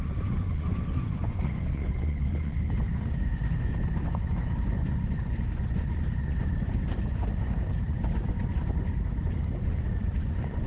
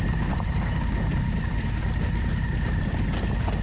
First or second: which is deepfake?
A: first